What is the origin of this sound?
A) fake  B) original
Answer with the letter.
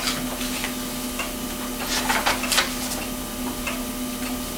B